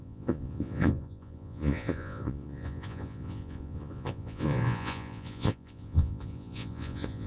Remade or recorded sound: remade